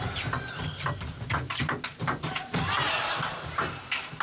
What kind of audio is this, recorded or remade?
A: recorded